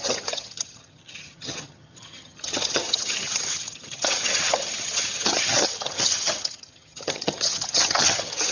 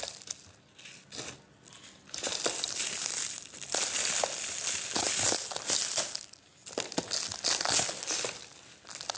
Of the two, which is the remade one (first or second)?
first